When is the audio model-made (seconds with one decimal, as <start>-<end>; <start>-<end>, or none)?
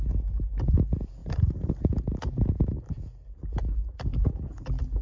none